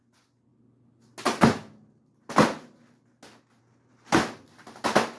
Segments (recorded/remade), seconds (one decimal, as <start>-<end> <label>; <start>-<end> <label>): 0.0-5.2 recorded